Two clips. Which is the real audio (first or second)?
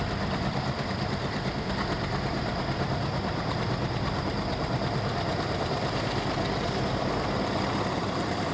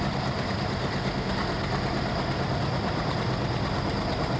second